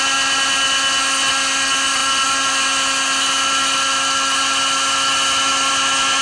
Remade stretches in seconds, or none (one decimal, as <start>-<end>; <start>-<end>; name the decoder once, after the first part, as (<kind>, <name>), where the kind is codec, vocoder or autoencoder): none